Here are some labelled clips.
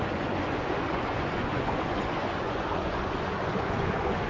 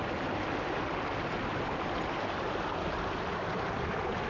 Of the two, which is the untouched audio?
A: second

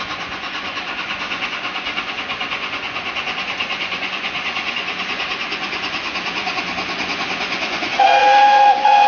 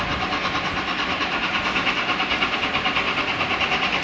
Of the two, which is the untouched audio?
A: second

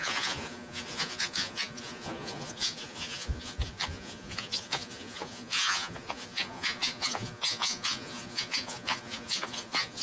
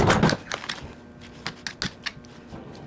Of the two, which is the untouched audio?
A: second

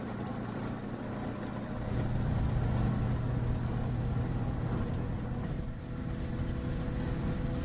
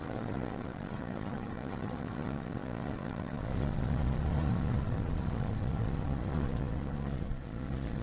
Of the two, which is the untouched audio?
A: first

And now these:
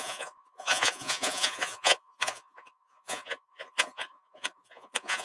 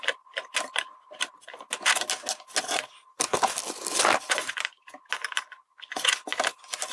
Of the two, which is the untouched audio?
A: second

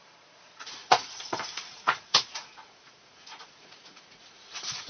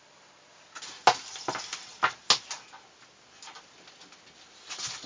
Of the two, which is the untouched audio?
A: second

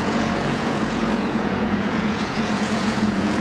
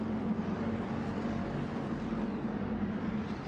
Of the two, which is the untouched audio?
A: second